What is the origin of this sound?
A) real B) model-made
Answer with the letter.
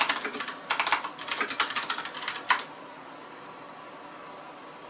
A